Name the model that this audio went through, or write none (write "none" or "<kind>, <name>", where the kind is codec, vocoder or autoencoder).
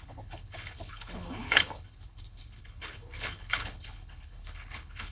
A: codec, HILCodec